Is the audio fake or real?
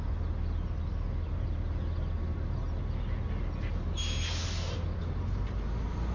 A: real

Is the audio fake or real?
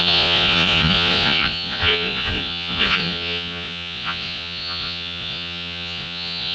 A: fake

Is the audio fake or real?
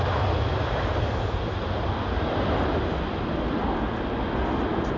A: real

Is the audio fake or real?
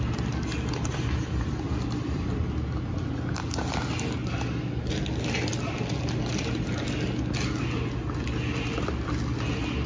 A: real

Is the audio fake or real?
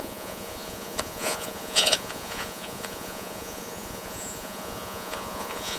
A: fake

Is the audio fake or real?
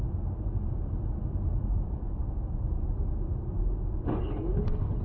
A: real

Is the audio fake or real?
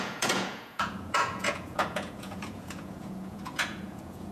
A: fake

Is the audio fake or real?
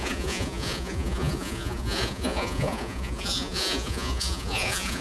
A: fake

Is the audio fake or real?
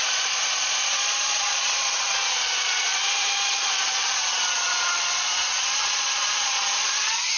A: fake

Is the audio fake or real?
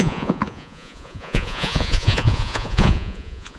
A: fake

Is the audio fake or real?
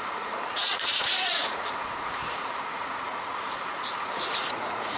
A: fake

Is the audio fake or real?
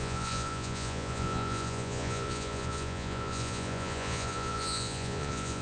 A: fake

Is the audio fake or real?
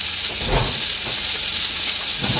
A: fake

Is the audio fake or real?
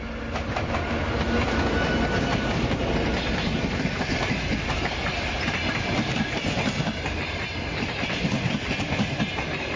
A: real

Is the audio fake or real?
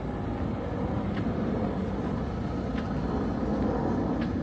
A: real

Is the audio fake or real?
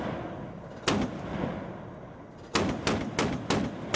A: real